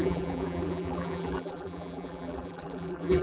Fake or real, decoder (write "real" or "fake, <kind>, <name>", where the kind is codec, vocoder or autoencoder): fake, vocoder, BigVGAN v2